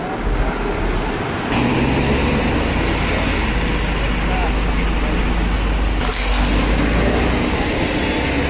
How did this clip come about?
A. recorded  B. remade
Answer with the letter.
A